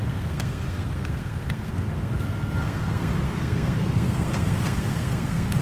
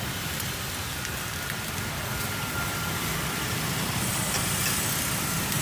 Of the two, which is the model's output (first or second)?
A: first